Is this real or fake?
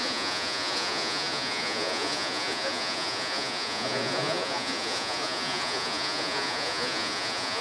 fake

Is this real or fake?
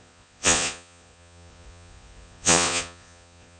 fake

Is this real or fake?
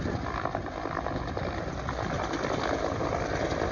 real